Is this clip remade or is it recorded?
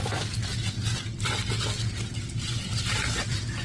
recorded